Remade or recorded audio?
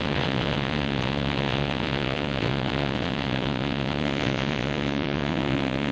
remade